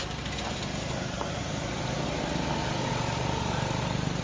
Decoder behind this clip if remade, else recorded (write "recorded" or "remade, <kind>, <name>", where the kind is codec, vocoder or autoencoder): recorded